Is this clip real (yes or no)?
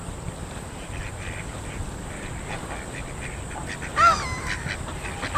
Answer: yes